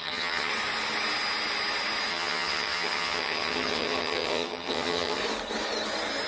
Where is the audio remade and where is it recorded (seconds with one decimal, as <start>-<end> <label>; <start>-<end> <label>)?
0.0-0.5 remade; 0.5-2.1 recorded; 2.1-5.2 remade; 5.2-6.3 recorded